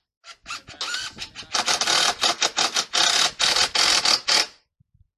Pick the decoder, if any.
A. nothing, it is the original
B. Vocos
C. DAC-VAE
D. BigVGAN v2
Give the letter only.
A